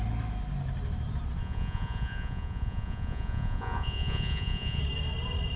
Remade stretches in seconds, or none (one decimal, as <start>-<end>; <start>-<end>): 1.4-4.8